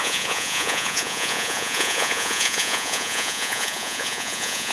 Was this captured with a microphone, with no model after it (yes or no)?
no